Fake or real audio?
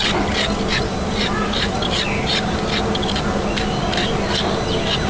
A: real